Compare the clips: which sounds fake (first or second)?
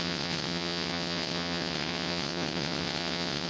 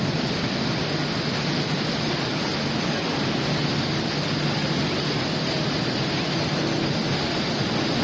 first